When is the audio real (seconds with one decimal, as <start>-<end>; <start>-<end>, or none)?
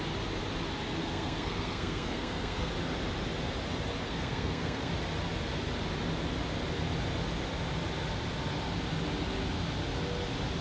0.0-1.0; 2.7-4.0; 4.9-10.6